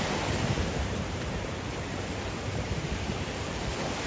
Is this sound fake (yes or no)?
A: yes